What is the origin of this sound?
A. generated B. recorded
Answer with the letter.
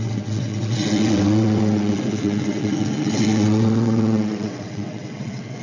A